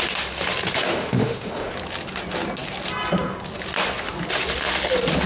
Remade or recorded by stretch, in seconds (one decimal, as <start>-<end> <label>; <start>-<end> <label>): 0.0-0.9 recorded; 0.9-1.7 remade; 1.7-5.3 recorded

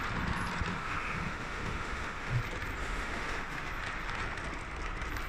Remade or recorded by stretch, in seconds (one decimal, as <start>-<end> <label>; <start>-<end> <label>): 0.0-0.7 recorded; 0.7-2.4 remade; 2.4-2.8 recorded; 2.8-3.7 remade; 3.7-5.3 recorded

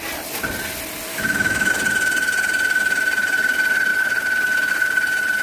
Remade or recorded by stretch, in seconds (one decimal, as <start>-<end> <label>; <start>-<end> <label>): 0.0-1.1 recorded; 1.1-1.7 remade; 1.7-5.4 recorded

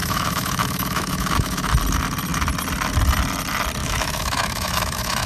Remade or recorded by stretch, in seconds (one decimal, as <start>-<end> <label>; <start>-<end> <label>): 0.0-1.7 remade; 1.7-3.8 recorded; 3.8-5.3 remade

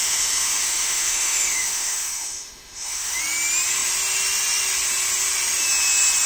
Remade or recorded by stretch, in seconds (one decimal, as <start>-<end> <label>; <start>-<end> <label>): 0.0-3.2 remade; 3.2-6.3 recorded